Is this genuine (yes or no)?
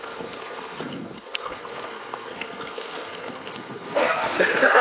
no